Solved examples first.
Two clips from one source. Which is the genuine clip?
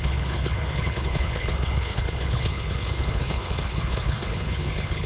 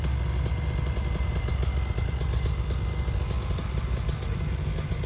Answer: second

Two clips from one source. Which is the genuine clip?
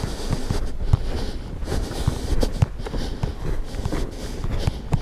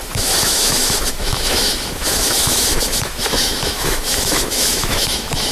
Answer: first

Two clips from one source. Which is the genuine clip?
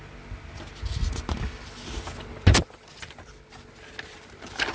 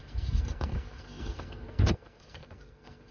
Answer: first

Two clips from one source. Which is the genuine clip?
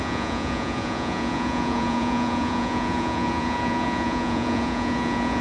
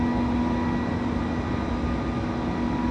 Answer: second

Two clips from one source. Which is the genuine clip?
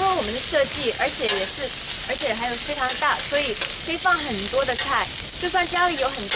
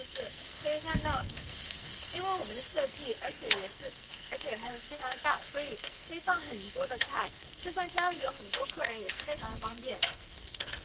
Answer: first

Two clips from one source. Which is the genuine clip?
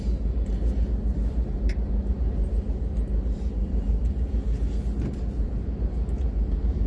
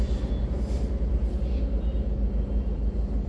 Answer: second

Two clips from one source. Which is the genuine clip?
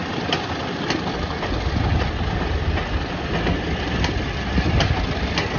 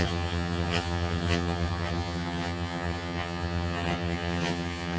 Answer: first